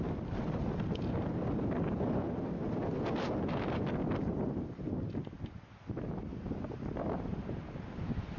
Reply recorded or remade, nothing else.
recorded